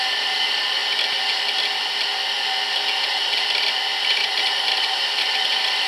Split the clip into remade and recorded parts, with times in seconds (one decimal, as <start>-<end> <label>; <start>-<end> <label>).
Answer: 0.0-0.8 remade; 0.8-3.4 recorded; 3.4-5.9 remade